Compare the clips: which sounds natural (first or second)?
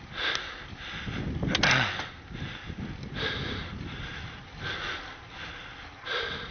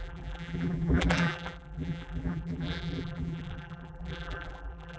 first